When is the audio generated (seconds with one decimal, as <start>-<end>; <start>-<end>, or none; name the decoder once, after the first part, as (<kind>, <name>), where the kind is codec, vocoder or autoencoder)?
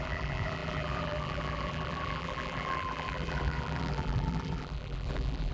0.0-5.5 (vocoder, BigVGAN v2)